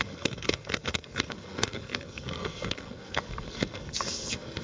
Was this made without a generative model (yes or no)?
no